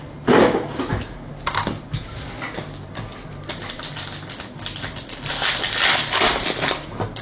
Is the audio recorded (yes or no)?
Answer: yes